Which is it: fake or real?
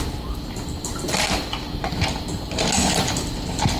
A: real